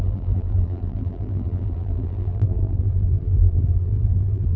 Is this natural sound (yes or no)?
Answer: no